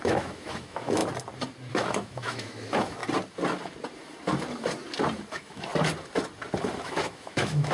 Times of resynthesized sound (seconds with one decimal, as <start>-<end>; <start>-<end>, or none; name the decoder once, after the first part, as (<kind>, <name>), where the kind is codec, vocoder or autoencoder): 0.0-1.0 (autoencoder, DAC-VAE); 1.7-3.0; 5.3-5.7; 6.8-7.7